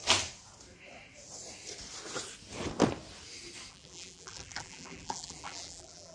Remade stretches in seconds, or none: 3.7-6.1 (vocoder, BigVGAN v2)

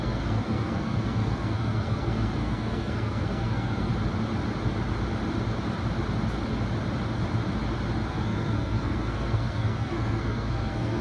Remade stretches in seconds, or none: 0.0-3.9 (codec, SNAC); 8.1-11.0

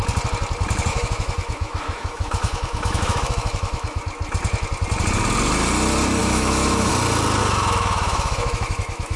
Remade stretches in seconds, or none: 0.9-4.0 (autoencoder, DAC-VAE); 6.2-6.9; 7.4-9.2